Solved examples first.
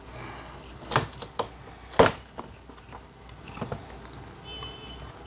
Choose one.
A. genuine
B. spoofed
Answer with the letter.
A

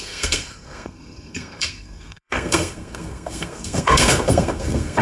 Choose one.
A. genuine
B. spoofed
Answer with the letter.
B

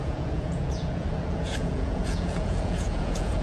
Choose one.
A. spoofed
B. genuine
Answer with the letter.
A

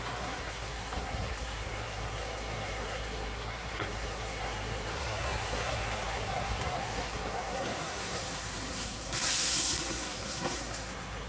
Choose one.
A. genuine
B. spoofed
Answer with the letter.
B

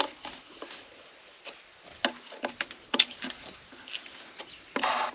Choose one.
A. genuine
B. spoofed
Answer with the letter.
A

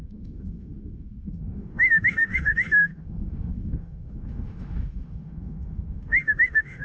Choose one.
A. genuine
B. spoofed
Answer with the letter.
B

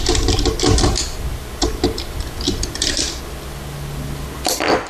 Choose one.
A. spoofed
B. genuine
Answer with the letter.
B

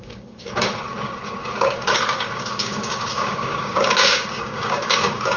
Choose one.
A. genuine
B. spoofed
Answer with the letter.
B